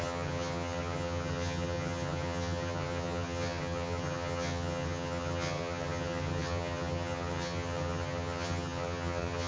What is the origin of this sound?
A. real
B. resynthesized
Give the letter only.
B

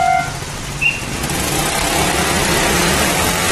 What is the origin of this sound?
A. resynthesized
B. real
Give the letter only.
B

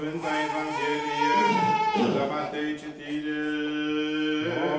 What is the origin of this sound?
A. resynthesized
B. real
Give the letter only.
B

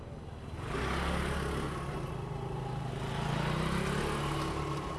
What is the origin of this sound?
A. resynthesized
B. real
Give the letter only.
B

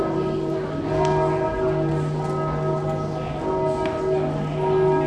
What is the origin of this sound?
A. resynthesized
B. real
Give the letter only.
B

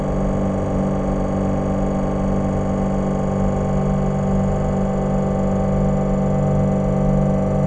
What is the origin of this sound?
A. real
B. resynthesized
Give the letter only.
A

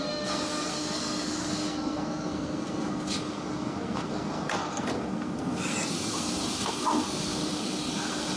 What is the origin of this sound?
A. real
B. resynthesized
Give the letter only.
B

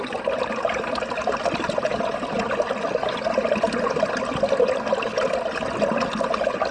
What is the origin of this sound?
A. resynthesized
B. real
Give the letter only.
B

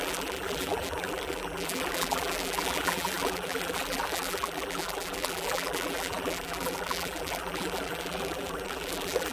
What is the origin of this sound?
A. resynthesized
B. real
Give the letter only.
A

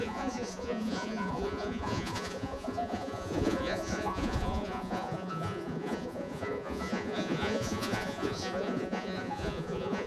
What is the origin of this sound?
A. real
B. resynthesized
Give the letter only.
B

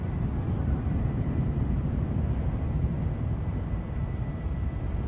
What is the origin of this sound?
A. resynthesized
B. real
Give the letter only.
A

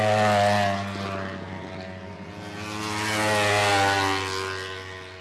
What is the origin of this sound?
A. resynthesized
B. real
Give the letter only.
B